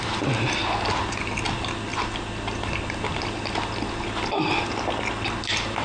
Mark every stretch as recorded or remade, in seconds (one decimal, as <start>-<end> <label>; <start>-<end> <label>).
0.0-5.8 recorded